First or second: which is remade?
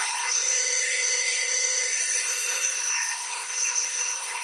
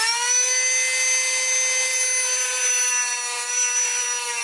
first